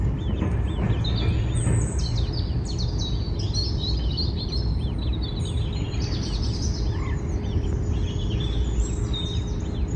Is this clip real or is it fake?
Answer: real